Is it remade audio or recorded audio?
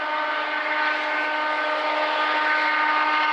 recorded